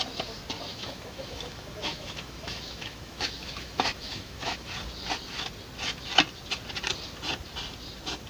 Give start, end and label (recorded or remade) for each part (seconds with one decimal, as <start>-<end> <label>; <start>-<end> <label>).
0.0-0.7 recorded; 0.7-4.7 remade; 4.7-8.3 recorded